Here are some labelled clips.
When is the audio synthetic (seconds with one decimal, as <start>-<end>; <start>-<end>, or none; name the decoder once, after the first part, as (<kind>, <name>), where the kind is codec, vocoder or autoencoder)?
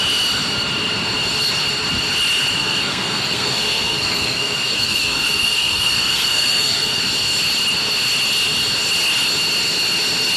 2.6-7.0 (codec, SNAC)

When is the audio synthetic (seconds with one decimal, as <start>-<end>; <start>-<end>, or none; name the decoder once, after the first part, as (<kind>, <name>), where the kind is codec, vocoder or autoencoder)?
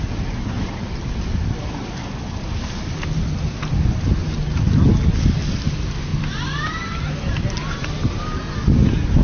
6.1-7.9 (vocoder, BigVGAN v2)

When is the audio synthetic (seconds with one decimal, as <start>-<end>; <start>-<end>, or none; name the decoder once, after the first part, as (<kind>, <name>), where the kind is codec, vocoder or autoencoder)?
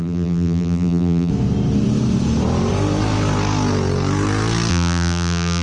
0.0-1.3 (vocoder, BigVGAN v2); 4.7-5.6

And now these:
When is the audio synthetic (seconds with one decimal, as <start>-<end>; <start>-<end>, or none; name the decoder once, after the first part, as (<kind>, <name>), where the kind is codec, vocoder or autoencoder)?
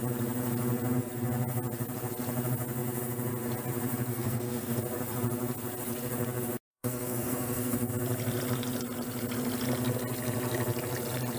4.1-4.8 (codec, SNAC); 6.7-7.9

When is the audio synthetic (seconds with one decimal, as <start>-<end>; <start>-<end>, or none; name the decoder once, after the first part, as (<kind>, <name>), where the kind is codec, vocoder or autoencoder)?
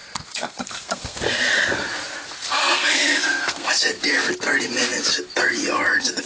0.0-1.2 (codec, SNAC); 2.4-3.7